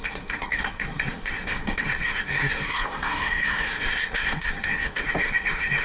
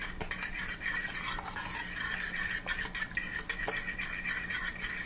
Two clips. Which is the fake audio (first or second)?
first